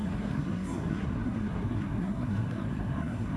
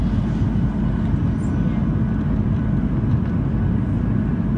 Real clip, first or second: second